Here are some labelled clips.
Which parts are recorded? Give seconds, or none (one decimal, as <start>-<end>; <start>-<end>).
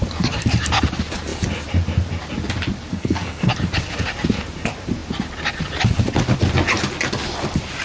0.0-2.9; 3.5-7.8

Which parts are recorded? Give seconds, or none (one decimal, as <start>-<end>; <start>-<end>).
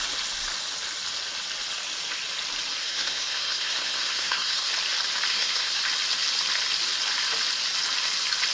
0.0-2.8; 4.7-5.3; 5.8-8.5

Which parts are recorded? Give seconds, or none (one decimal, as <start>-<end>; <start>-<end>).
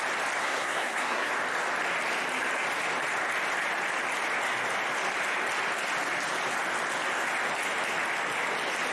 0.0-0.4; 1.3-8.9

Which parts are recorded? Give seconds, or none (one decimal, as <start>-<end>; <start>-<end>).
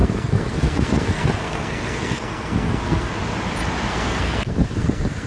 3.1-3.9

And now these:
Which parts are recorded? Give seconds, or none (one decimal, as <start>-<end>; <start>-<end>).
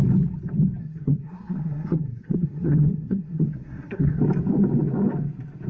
0.0-0.8; 4.2-5.7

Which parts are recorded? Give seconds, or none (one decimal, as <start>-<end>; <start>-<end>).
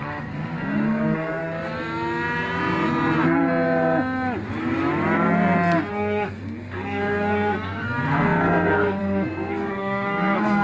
1.4-5.9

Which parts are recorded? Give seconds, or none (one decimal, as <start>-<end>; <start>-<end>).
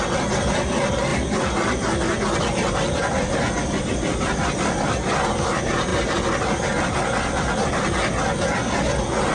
0.0-9.3